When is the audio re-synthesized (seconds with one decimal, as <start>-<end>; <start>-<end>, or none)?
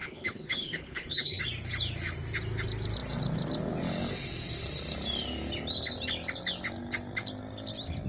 0.0-1.4